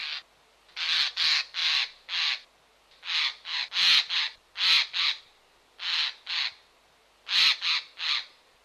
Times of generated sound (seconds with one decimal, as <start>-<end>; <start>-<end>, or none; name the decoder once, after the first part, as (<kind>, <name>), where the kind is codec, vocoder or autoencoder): none